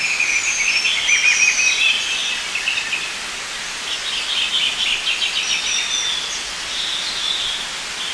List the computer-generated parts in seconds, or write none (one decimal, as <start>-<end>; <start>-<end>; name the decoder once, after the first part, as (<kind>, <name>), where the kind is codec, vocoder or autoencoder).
none

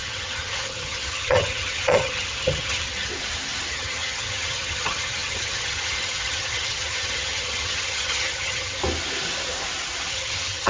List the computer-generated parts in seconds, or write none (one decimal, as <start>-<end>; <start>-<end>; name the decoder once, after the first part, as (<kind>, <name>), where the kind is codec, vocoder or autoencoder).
0.0-3.1 (vocoder, HiFi-GAN); 3.7-8.8; 10.1-10.7

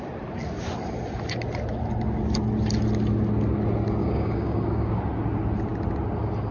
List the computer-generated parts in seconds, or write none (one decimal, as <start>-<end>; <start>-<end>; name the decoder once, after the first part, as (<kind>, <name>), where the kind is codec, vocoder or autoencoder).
4.0-5.0 (codec, DAC)

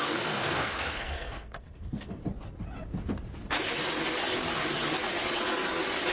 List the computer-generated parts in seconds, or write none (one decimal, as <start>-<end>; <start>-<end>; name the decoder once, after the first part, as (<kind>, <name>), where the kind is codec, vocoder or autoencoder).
0.0-2.2 (codec, SNAC)

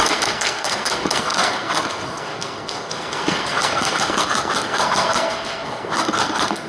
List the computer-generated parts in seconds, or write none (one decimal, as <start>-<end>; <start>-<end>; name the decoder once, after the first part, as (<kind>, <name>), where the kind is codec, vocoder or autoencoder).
0.0-6.7 (codec, SNAC)